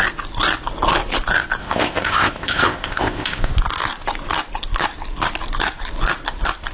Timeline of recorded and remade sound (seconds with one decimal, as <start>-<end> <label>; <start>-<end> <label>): 0.0-1.6 recorded; 1.6-3.5 remade; 3.5-6.7 recorded